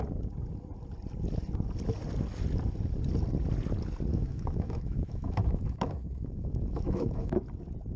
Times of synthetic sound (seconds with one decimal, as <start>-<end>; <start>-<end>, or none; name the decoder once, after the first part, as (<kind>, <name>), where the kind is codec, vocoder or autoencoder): 4.1-7.4 (autoencoder, DAC-VAE)